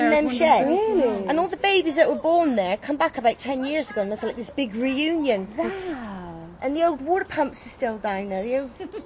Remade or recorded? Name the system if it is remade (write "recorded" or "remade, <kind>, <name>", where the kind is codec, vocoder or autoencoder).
recorded